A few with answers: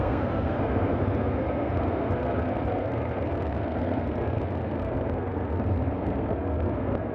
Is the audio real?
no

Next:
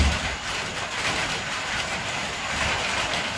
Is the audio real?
yes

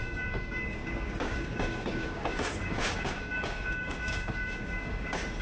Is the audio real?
no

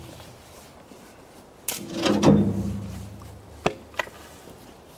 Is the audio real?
yes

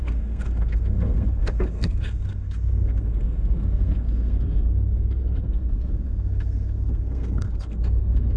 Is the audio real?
no